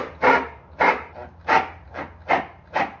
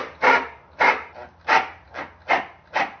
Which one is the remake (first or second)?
first